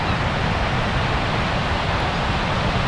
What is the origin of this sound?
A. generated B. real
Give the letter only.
B